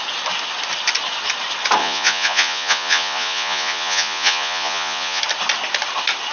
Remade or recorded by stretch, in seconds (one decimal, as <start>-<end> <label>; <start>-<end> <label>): 0.0-1.8 recorded; 1.8-5.2 remade; 5.2-6.3 recorded